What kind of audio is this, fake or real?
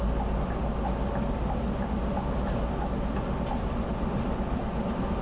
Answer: real